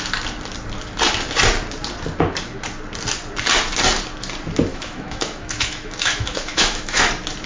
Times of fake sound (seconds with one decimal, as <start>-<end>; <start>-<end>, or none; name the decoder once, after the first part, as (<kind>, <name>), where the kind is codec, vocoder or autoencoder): 4.7-7.1 (autoencoder, DAC-VAE)